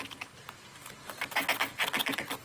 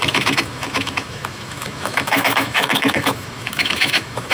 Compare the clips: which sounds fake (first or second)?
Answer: second